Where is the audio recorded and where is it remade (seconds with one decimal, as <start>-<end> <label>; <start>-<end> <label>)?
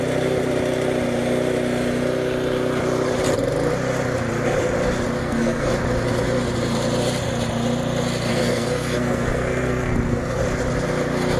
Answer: 0.0-5.2 recorded; 5.2-5.7 remade; 5.7-8.3 recorded; 8.3-10.4 remade; 10.4-11.4 recorded